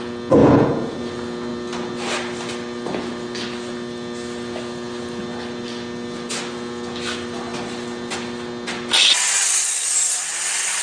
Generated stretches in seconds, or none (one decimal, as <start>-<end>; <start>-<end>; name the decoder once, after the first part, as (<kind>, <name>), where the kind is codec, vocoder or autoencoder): 0.4-1.0 (vocoder, Vocos)